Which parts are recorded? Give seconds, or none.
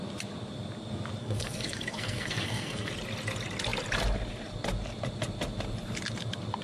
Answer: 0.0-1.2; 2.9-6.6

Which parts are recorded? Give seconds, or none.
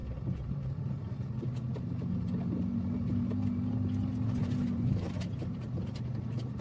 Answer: 1.4-6.6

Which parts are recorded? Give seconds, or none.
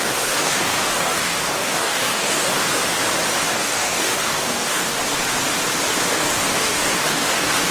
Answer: 2.8-3.5; 5.0-6.1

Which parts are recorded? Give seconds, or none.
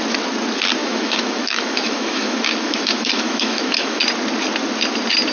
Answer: 0.0-0.8; 4.0-5.3